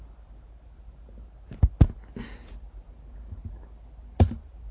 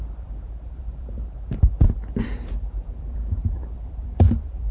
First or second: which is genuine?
first